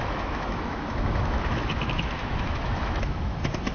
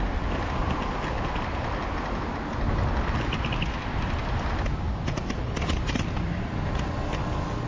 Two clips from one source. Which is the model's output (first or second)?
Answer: first